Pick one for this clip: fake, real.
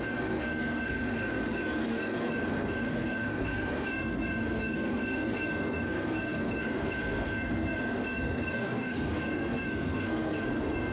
fake